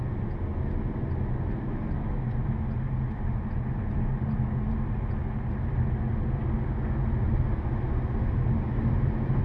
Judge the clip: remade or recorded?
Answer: recorded